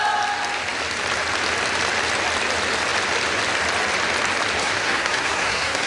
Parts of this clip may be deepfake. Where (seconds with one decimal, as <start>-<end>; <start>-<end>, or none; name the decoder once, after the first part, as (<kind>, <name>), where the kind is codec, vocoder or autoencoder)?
4.6-5.9 (codec, SNAC)